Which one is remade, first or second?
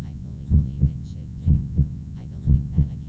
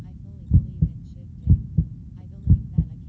first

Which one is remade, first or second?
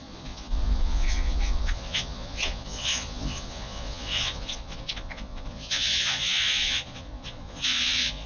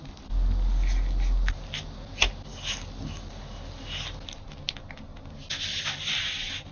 first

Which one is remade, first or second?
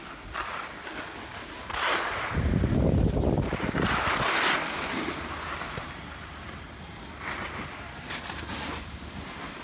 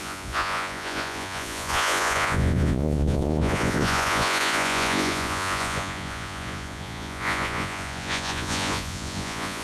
second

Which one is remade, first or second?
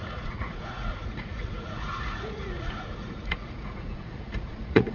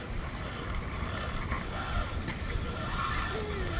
first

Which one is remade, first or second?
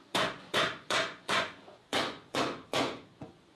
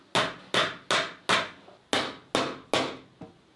first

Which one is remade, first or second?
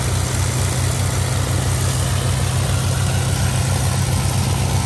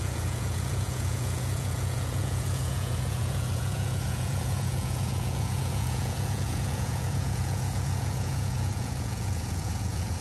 second